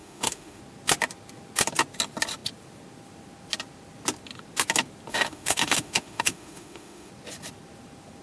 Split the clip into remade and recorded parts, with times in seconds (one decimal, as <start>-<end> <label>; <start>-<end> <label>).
0.0-0.6 remade; 0.6-5.1 recorded; 5.1-7.1 remade; 7.1-8.2 recorded